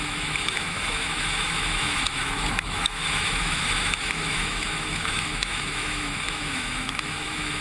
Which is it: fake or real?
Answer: fake